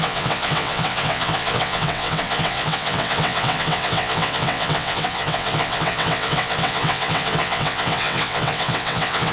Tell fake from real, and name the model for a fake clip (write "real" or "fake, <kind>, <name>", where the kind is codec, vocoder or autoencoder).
fake, vocoder, WaveNeXt